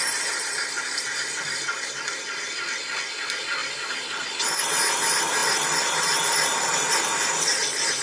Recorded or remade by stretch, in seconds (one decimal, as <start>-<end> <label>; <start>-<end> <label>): 0.0-8.0 recorded